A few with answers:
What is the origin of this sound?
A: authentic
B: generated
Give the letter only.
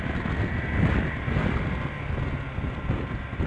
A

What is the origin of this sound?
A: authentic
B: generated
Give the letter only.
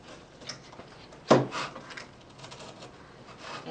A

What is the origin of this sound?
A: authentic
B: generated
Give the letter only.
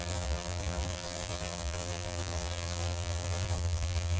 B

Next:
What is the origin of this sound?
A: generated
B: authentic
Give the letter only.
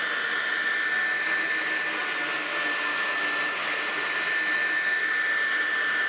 B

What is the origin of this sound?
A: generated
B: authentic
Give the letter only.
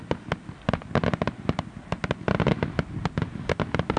B